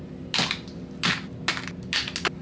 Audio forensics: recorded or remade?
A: recorded